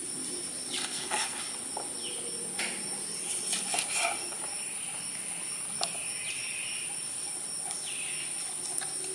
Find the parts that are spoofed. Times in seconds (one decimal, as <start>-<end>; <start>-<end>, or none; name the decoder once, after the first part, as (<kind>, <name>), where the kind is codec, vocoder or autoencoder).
0.8-1.4 (codec, SNAC)